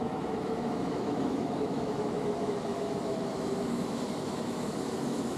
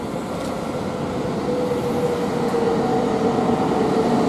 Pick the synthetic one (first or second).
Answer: first